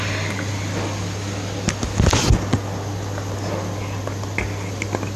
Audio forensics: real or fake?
real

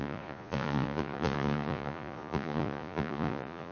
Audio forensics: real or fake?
fake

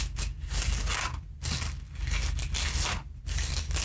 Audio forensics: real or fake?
real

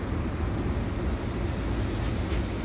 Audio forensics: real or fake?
real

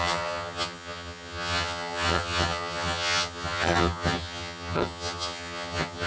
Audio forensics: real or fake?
fake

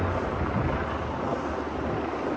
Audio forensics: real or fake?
real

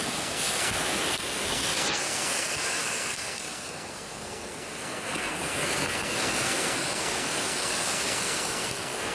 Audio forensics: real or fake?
fake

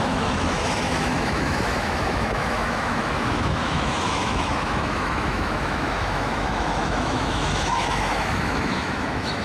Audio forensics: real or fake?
fake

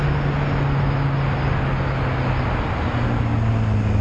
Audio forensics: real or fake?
real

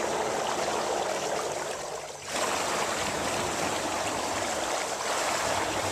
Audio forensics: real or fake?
real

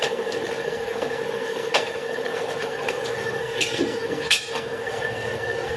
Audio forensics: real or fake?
fake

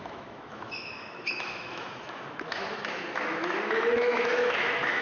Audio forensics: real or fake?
fake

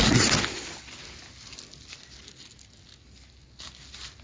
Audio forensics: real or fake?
real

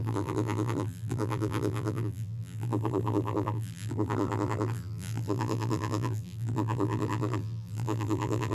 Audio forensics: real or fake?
fake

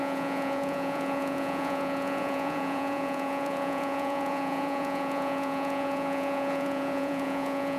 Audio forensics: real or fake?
fake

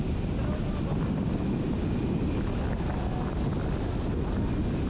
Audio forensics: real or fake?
real